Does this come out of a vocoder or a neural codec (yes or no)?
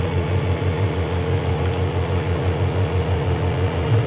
yes